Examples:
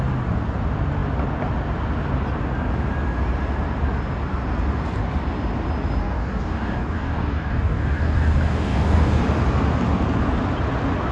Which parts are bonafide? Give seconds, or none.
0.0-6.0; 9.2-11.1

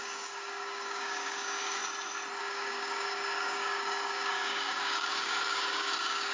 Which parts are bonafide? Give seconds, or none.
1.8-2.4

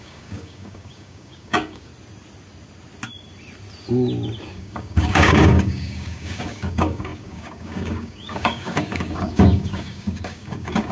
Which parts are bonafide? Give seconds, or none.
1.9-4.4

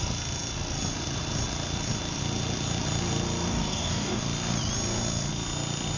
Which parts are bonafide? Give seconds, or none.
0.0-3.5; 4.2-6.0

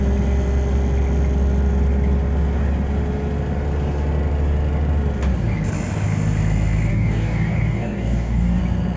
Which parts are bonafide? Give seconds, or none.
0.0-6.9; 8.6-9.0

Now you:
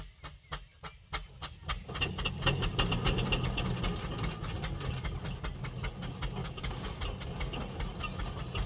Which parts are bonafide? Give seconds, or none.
0.0-6.4; 7.0-8.7

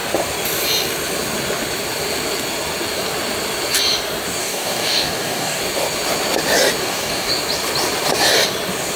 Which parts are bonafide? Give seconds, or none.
0.0-4.4; 5.6-6.8; 7.3-9.0